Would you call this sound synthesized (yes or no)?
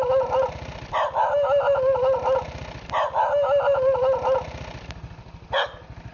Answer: no